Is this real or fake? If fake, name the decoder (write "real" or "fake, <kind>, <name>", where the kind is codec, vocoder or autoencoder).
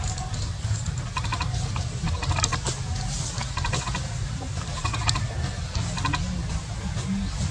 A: real